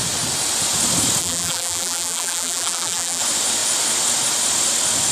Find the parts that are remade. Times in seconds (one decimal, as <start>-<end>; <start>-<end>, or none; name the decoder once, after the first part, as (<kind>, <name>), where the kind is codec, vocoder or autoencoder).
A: 1.2-3.2 (vocoder, BigVGAN v2)